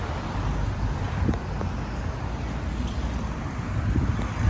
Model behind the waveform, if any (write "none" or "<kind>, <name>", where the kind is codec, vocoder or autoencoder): none